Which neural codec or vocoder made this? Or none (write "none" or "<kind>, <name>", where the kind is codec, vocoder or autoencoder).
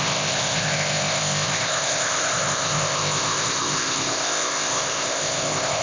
codec, ZipCodec